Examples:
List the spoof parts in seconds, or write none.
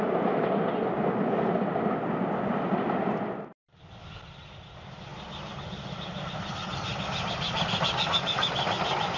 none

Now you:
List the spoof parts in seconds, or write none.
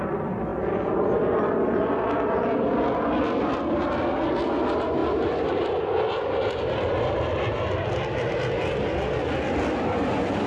5.0-5.9 (vocoder, BigVGAN v2)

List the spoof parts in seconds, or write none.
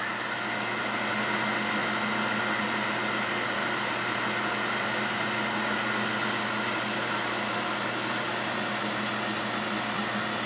none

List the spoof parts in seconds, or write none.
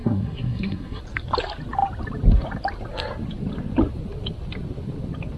0.0-1.0 (codec, SNAC)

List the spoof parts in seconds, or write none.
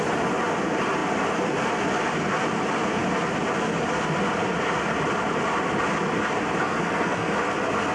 6.6-7.3 (codec, SNAC)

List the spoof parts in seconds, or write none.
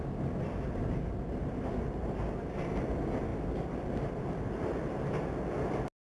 none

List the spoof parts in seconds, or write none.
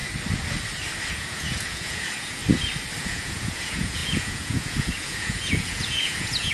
1.1-2.4 (vocoder, Vocos); 3.0-6.5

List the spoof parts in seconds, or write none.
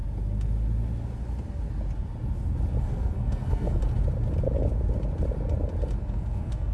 2.8-3.8 (codec, SNAC); 6.0-6.7